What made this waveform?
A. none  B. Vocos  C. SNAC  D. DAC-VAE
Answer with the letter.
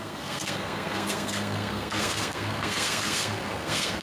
C